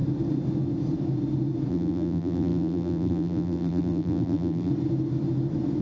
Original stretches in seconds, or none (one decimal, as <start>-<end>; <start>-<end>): 0.0-1.7; 4.7-5.8